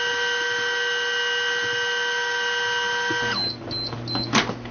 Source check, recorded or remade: recorded